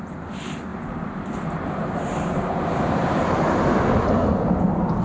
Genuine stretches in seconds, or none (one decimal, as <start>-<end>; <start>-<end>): 0.0-0.7; 3.7-5.0